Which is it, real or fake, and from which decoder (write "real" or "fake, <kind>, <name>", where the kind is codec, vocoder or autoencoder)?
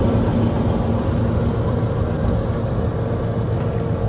real